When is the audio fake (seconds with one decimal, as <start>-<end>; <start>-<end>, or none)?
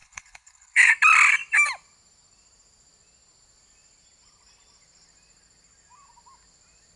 0.0-0.9